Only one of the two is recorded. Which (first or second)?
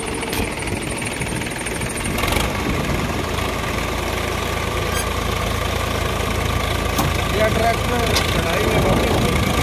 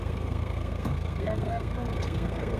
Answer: first